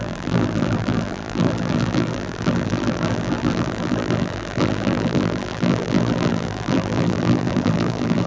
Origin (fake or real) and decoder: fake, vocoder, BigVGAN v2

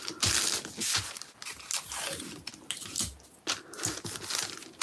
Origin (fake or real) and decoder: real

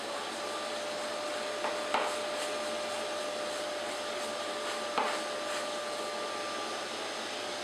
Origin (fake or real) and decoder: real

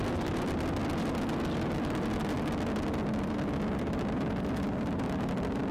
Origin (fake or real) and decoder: real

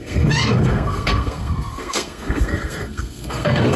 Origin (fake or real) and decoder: fake, codec, SNAC